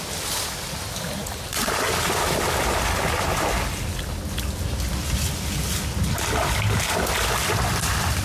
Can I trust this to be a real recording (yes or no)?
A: yes